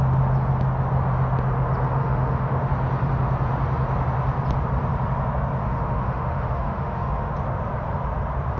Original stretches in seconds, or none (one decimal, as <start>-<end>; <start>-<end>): 0.0-2.0; 2.7-5.6; 7.6-8.6